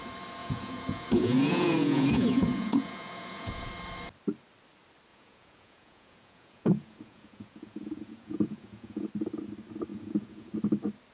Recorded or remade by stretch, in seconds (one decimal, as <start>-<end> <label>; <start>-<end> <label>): 0.0-0.4 recorded; 0.4-3.7 remade; 3.7-5.1 recorded; 5.1-9.1 remade; 9.1-9.9 recorded; 9.9-10.5 remade; 10.5-11.1 recorded